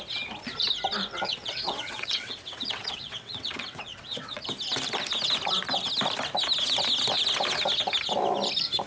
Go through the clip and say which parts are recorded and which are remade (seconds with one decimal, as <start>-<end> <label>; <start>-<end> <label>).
0.0-1.0 recorded; 1.0-4.4 remade; 4.4-8.9 recorded

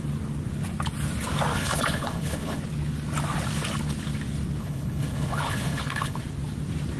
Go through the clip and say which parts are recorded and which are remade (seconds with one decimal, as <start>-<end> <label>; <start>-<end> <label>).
0.0-1.5 recorded; 1.5-2.6 remade; 2.6-4.6 recorded; 4.6-6.2 remade; 6.2-7.0 recorded

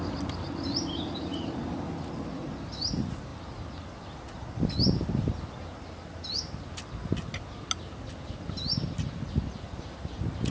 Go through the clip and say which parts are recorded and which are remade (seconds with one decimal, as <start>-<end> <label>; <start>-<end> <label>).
0.0-10.5 recorded

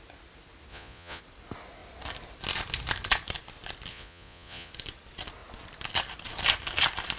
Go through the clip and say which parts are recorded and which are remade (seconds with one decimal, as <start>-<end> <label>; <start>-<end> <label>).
0.0-0.7 recorded; 0.7-1.2 remade; 1.2-3.9 recorded; 3.9-4.7 remade; 4.7-7.2 recorded

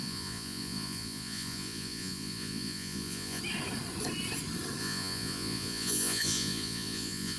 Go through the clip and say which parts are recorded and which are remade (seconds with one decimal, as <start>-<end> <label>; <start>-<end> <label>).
0.0-3.4 remade; 3.4-4.8 recorded; 4.8-7.4 remade

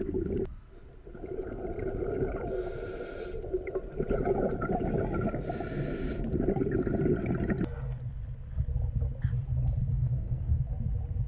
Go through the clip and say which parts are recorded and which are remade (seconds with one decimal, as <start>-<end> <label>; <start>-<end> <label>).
0.0-9.9 recorded; 9.9-10.6 remade; 10.6-11.3 recorded